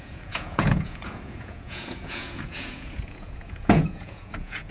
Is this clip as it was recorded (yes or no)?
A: no